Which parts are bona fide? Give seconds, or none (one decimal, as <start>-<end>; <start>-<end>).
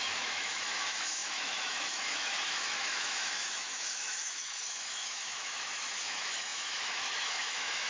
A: none